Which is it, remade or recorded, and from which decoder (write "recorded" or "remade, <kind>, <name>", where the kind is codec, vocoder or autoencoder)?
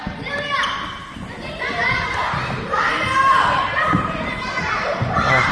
remade, vocoder, BigVGAN v2